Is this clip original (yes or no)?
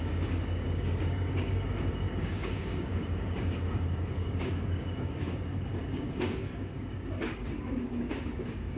no